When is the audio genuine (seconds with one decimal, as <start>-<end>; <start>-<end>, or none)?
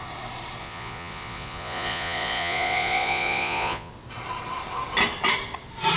0.0-0.6; 3.9-6.0